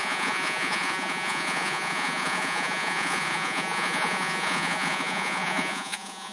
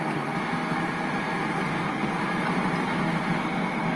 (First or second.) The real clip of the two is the second